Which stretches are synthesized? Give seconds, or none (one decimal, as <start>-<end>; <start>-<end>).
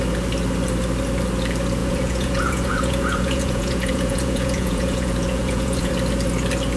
1.8-5.9